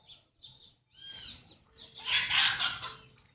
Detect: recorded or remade recorded